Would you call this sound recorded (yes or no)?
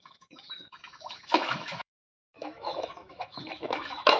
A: no